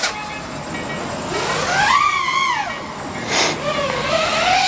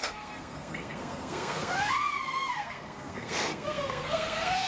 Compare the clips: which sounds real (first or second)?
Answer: first